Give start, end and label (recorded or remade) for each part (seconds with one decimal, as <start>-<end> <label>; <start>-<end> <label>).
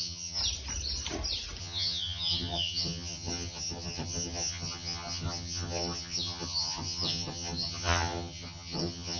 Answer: 0.0-0.4 remade; 0.4-1.6 recorded; 1.6-9.2 remade